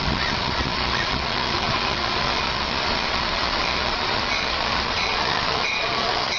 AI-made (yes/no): yes